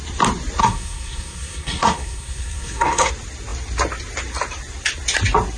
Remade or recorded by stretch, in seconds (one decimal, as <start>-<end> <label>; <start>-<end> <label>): 0.0-0.6 recorded; 0.6-3.1 remade; 3.1-5.6 recorded

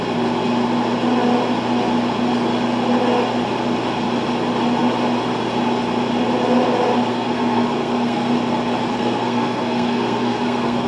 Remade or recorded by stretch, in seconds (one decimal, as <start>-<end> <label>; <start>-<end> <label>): 0.0-7.1 recorded; 7.1-8.3 remade; 8.3-8.9 recorded; 8.9-10.9 remade

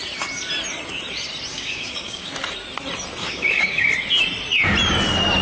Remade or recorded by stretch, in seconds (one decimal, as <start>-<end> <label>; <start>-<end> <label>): 0.0-1.5 recorded; 1.5-2.3 remade; 2.3-3.2 recorded; 3.2-3.9 remade; 3.9-5.4 recorded

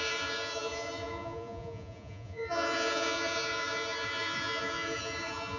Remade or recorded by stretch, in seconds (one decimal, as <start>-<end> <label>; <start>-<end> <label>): 0.0-5.6 remade